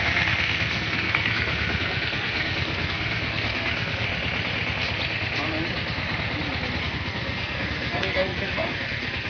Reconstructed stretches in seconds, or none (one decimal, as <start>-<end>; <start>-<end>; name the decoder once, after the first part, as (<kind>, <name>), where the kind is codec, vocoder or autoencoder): 0.0-4.1 (codec, SNAC); 6.8-9.3